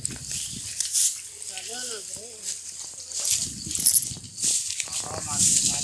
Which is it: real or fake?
real